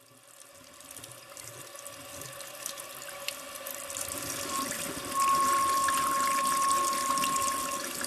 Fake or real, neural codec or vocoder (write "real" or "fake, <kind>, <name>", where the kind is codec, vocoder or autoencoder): real